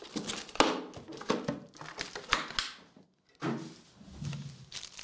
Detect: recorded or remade recorded